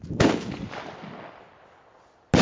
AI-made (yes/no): no